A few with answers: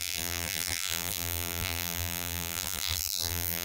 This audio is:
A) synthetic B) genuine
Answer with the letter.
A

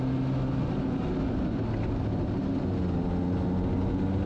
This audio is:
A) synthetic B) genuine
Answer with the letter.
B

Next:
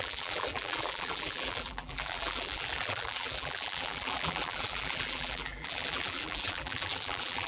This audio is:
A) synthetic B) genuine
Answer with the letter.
A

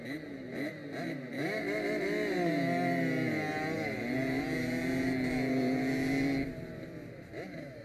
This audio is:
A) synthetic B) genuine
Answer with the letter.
B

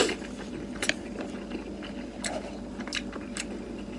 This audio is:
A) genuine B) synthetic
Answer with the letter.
A